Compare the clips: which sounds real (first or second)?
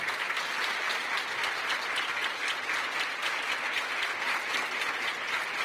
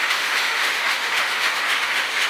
first